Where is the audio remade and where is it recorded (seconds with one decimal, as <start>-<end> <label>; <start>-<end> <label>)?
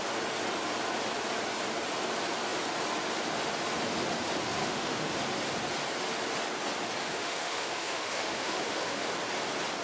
0.0-4.6 recorded; 4.6-5.1 remade; 5.1-7.1 recorded; 7.1-9.1 remade; 9.1-9.8 recorded